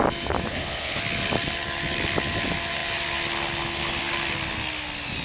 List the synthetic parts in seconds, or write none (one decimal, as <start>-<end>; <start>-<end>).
0.5-1.0